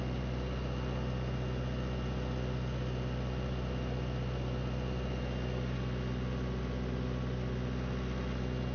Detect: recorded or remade recorded